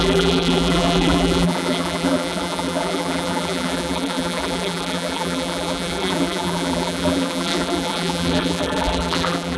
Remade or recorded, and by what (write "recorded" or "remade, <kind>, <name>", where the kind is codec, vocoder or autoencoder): remade, vocoder, BigVGAN v2